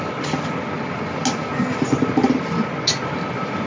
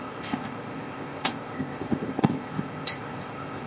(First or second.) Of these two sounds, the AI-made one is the second